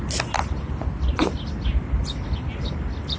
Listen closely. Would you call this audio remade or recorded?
recorded